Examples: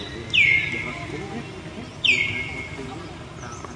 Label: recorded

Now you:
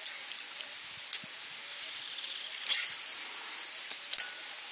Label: recorded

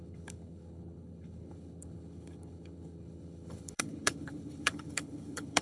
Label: remade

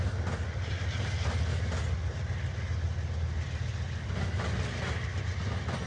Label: recorded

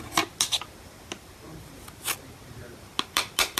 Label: recorded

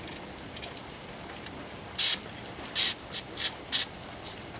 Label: recorded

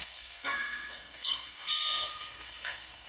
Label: remade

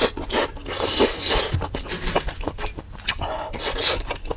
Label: recorded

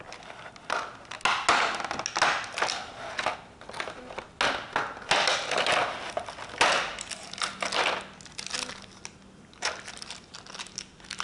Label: recorded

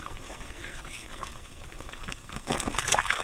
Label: remade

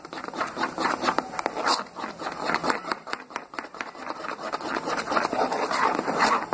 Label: remade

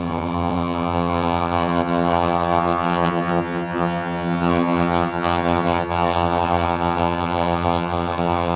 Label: remade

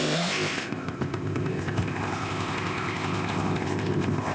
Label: remade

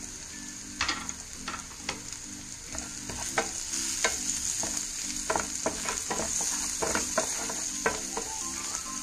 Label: recorded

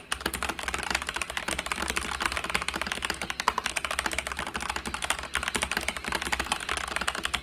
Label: recorded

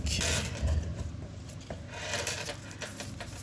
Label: recorded